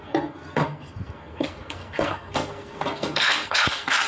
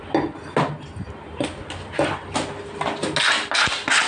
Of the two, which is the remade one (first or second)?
first